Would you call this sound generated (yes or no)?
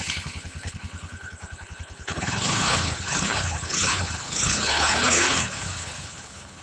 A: yes